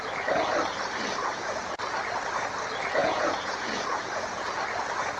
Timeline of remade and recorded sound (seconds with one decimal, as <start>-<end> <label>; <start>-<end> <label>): 0.0-1.2 recorded; 1.2-1.8 remade; 1.8-3.0 recorded; 3.0-4.5 remade; 4.5-5.2 recorded